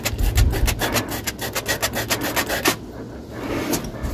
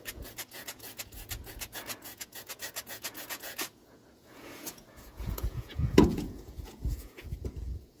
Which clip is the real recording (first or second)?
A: first